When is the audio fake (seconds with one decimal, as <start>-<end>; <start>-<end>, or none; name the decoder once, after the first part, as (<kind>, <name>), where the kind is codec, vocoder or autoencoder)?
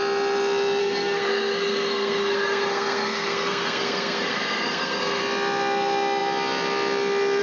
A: 0.8-5.2 (codec, SNAC)